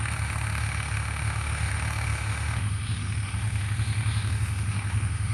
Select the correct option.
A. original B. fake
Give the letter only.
B